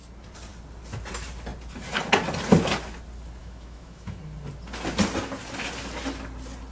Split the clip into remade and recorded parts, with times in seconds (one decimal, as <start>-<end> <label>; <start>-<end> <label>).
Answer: 0.0-3.4 recorded; 3.4-4.2 remade; 4.2-6.7 recorded